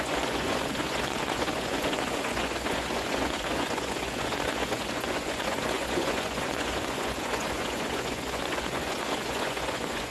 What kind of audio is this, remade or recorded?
remade